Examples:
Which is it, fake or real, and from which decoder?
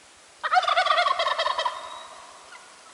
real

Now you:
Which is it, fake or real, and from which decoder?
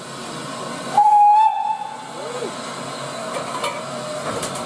real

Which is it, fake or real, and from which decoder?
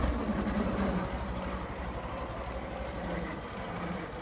real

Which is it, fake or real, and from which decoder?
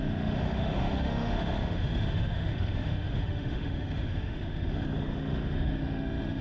fake, autoencoder, DAC-VAE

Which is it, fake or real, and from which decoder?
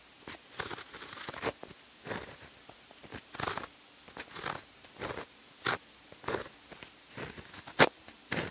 real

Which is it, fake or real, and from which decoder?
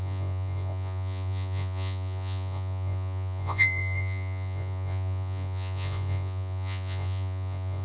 fake, vocoder, Vocos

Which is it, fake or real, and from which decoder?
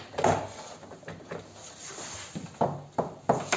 real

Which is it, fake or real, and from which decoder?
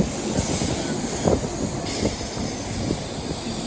real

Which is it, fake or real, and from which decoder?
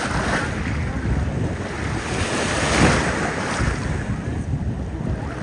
real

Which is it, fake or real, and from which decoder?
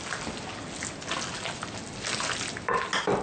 real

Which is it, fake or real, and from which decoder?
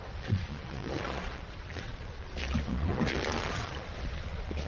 fake, vocoder, Vocos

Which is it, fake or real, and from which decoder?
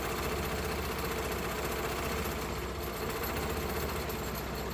real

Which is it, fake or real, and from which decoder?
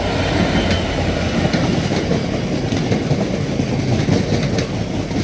real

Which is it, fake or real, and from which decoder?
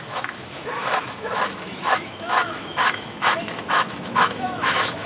fake, autoencoder, DAC-VAE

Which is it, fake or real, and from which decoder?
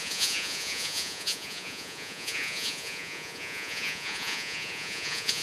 fake, vocoder, Vocos